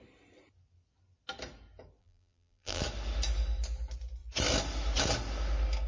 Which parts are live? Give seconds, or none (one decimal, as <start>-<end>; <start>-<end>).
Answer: 0.0-2.0; 2.8-5.9